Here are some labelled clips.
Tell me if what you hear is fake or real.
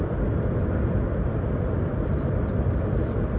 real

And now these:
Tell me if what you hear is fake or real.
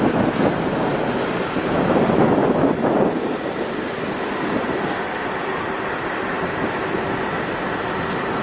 real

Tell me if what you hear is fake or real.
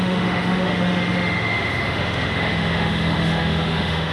fake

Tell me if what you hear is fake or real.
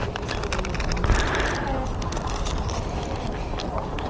fake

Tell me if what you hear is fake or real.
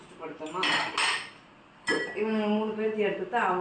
real